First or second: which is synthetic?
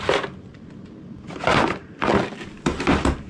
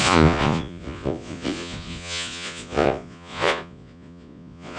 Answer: second